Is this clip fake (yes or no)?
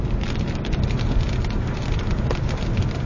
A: no